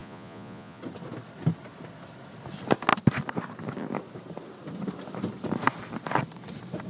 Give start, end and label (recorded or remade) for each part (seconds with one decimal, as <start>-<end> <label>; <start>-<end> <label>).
0.0-0.8 remade; 0.8-6.9 recorded